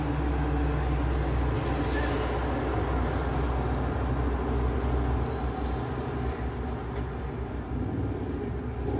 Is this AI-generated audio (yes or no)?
no